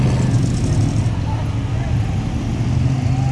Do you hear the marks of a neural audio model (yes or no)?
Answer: no